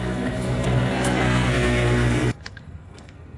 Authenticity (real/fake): fake